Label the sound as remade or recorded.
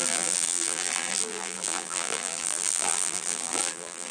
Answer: remade